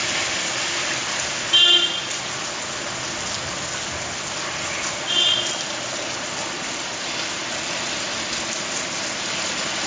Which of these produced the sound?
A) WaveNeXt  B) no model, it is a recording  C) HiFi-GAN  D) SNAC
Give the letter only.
B